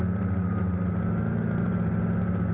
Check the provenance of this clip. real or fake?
real